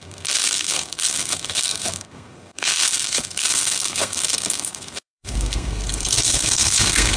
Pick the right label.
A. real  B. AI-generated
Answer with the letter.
B